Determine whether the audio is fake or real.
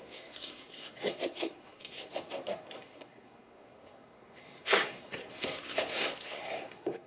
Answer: fake